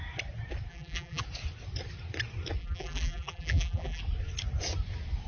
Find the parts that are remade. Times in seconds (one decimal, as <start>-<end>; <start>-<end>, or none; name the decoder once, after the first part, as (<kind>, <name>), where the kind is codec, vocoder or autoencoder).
0.7-1.2 (vocoder, BigVGAN v2); 2.6-4.0